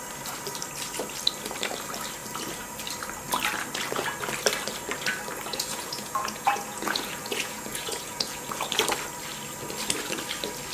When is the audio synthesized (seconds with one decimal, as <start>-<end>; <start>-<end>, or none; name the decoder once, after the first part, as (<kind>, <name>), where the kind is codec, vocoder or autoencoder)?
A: 5.5-8.7 (vocoder, Vocos)